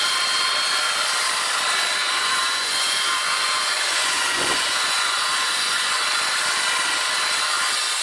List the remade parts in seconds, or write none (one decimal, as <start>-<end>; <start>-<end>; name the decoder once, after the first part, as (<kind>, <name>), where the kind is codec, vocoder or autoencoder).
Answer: 2.0-6.0 (vocoder, Vocos)